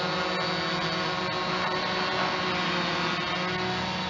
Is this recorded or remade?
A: recorded